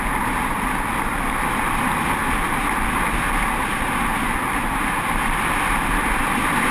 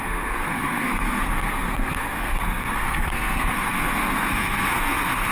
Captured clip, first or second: first